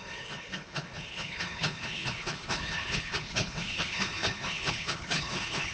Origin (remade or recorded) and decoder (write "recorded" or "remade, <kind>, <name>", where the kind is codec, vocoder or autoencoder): remade, codec, HILCodec